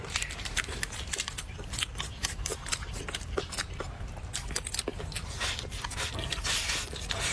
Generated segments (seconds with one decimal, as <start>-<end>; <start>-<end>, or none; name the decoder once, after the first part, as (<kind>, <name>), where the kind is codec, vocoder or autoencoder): 0.0-1.0 (vocoder, BigVGAN v2); 2.2-4.5; 4.9-6.1